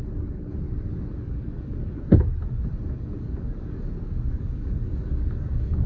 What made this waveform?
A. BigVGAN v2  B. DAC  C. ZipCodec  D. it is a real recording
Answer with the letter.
B